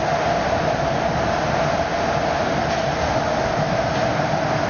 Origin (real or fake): real